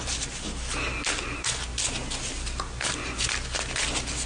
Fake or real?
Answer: real